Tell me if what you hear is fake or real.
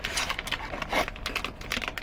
real